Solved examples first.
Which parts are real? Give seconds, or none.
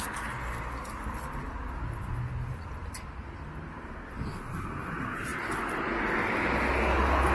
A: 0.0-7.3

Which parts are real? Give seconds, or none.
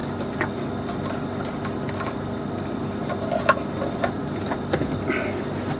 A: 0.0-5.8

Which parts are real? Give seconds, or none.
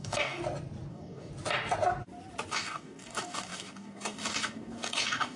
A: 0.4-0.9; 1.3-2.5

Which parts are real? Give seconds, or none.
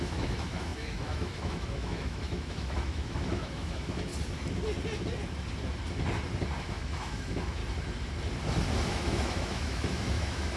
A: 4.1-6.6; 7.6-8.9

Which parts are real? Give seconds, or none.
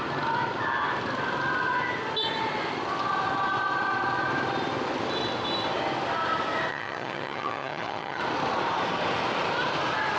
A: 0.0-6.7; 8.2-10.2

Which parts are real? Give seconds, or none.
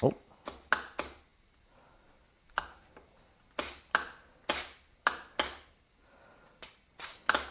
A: 0.0-7.5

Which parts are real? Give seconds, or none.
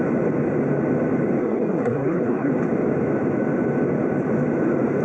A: 0.0-1.4; 2.5-5.0